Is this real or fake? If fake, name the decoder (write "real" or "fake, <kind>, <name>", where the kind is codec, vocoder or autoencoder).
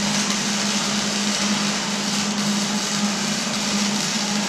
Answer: real